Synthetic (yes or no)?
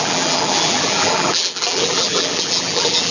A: yes